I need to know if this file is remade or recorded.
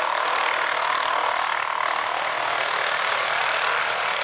recorded